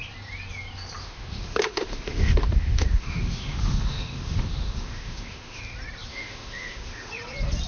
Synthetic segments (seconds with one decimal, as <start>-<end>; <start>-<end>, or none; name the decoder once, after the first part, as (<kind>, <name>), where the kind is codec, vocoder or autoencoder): 1.0-5.6 (autoencoder, DAC-VAE); 6.1-7.1